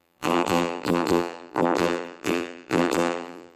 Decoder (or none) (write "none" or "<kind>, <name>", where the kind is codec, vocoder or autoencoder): vocoder, BigVGAN v2